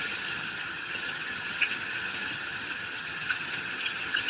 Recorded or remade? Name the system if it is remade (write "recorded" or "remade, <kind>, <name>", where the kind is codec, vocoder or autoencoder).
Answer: remade, vocoder, HiFi-GAN